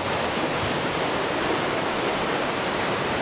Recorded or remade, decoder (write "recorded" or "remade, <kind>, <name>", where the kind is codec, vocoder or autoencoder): remade, vocoder, BigVGAN v2